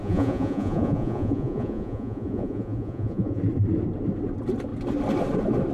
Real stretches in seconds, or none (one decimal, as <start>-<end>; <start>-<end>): 3.4-5.7

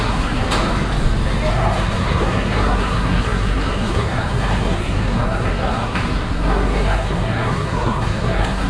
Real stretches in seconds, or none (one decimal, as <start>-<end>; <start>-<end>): 0.4-1.5

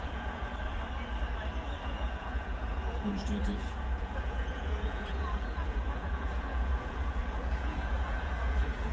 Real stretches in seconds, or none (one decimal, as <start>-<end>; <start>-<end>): 0.5-1.8

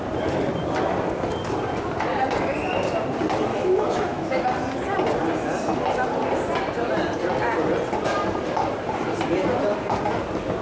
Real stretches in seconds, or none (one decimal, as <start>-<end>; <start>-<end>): 0.0-3.5; 4.4-10.6